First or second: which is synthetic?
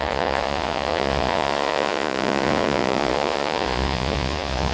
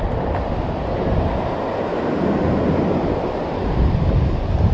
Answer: first